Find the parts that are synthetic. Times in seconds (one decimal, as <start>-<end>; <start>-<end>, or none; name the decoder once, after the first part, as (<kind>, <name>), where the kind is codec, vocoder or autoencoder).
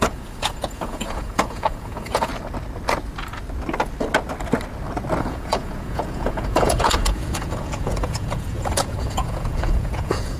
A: 0.0-2.3 (vocoder, Vocos); 5.2-10.4